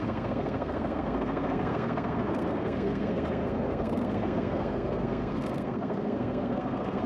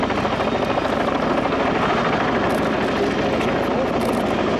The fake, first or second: first